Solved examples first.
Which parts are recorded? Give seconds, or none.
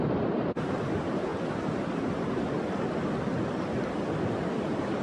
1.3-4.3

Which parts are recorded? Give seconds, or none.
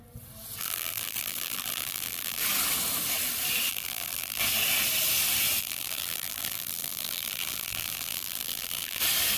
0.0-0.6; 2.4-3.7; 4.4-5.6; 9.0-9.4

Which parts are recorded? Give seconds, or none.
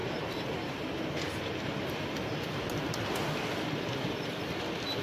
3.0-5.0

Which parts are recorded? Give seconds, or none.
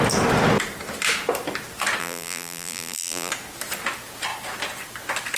0.0-2.0; 3.3-5.4